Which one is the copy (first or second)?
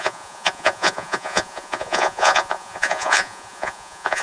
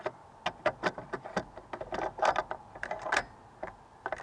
first